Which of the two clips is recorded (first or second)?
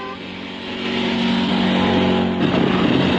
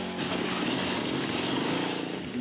first